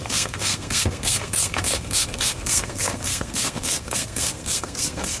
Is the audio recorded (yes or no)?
no